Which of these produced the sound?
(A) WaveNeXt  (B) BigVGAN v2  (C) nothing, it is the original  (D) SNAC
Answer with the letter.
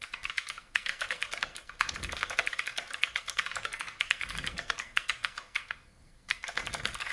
D